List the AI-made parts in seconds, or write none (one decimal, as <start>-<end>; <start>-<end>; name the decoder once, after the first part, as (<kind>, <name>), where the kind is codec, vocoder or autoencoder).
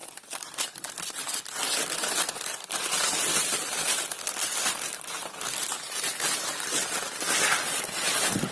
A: none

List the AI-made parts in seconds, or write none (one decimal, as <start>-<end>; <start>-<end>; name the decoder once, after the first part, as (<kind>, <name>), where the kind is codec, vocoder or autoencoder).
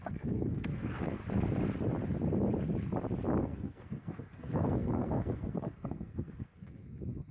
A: 0.0-1.2 (codec, SNAC); 3.4-7.3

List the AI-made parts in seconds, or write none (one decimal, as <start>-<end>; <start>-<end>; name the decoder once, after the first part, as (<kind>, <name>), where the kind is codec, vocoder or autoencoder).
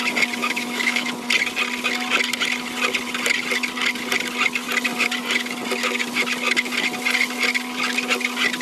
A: 0.4-1.1 (autoencoder, DAC-VAE)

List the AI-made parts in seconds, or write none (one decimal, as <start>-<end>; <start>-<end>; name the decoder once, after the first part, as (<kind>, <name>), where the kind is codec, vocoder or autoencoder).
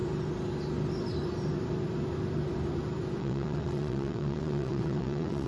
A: 3.2-5.5 (vocoder, WaveNeXt)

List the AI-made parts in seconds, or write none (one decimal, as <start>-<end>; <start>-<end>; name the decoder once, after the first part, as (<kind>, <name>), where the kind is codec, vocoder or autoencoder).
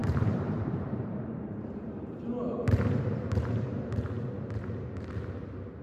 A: 0.0-2.3 (vocoder, BigVGAN v2); 2.9-3.7